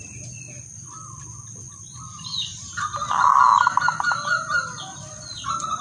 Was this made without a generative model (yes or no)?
yes